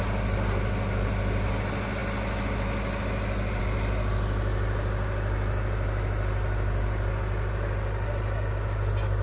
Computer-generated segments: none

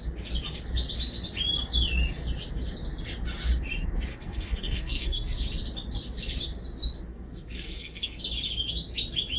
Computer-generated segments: 4.1-5.4 (codec, SNAC); 7.1-8.2

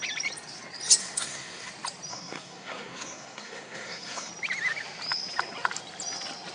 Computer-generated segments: 1.0-1.7 (codec, SNAC); 2.1-4.3

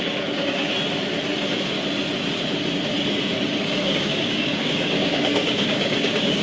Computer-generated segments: 0.0-0.7 (codec, DAC); 3.6-6.4

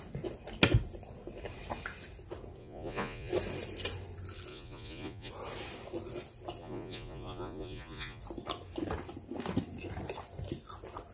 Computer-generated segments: 2.6-3.3 (vocoder, Vocos); 4.5-5.3; 6.6-8.2

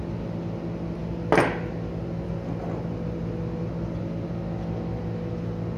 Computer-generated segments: none

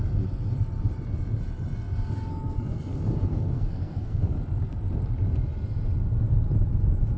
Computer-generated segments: 2.3-2.9 (codec, SNAC); 3.3-4.2